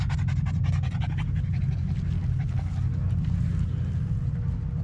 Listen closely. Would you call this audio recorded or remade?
recorded